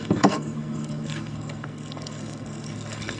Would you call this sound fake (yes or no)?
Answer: yes